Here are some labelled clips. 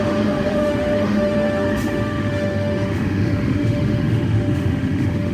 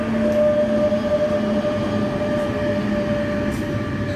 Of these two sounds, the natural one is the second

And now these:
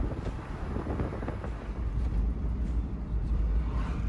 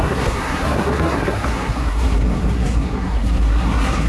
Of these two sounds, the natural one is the first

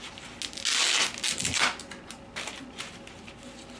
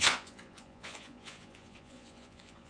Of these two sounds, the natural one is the first